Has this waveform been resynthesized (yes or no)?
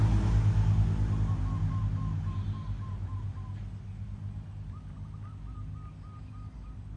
no